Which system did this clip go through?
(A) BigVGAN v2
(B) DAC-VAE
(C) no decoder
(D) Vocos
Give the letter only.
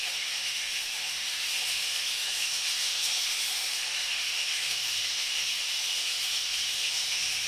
B